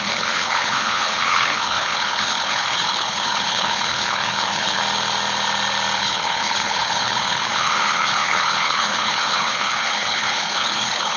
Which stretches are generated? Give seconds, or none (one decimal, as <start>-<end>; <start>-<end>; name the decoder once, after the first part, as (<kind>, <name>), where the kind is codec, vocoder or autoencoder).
0.0-4.8 (codec, HILCodec); 6.0-11.2